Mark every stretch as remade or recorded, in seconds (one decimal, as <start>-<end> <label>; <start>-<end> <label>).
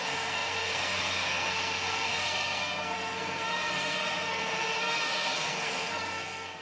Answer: 0.0-6.6 remade